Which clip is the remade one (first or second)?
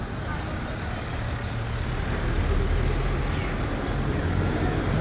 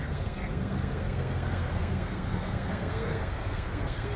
second